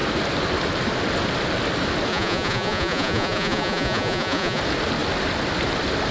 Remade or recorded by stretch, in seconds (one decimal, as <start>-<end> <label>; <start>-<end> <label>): 0.0-2.1 recorded; 2.1-4.6 remade; 4.6-6.1 recorded